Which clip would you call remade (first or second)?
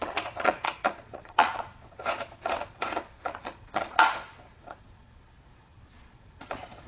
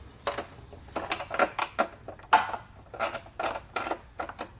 first